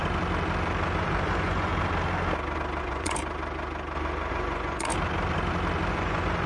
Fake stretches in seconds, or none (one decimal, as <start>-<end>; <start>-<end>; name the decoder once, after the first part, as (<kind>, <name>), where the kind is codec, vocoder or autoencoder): 1.0-1.7 (vocoder, Vocos); 2.8-3.2; 4.3-4.9; 5.9-6.5